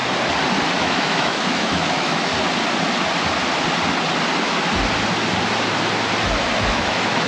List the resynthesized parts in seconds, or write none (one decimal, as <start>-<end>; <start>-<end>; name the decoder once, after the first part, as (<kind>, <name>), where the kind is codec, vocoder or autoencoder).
0.8-2.3 (autoencoder, DAC-VAE); 6.7-7.3